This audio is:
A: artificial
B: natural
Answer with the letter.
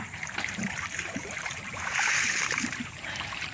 A